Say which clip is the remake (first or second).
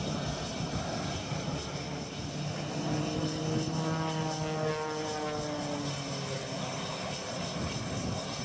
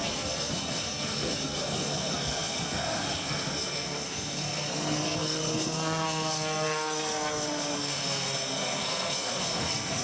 second